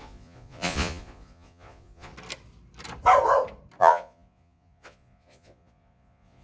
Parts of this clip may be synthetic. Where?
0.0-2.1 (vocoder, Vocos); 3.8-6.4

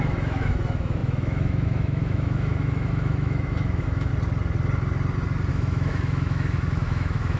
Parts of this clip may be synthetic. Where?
0.0-4.1 (autoencoder, DAC-VAE); 5.5-7.4